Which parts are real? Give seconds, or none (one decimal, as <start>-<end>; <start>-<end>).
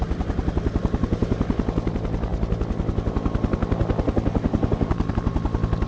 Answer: 0.0-5.9